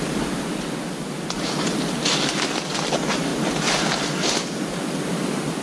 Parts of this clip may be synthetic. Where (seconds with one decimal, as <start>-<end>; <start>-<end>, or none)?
none